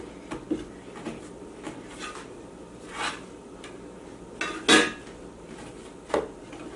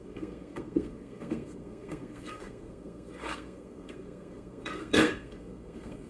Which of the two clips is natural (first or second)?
first